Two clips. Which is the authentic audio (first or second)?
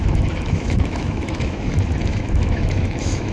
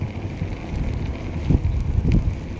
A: second